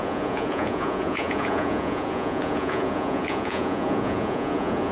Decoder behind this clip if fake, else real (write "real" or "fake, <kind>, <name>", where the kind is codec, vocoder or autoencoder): fake, vocoder, Vocos